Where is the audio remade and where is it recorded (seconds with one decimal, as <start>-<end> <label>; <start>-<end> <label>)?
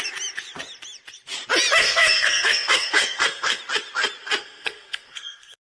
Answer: 0.0-1.8 recorded; 1.8-3.6 remade; 3.6-4.4 recorded; 4.4-5.6 remade